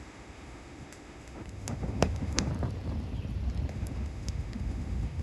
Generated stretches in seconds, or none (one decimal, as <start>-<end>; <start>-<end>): 0.0-2.5; 3.7-5.2